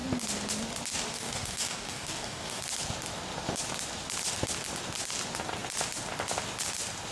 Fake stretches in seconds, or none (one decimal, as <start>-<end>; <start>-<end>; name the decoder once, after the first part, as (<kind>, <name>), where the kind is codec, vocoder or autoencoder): 1.1-2.6 (codec, DAC)